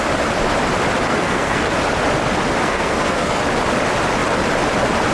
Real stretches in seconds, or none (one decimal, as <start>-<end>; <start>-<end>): 0.0-1.1; 1.7-2.6; 3.4-5.1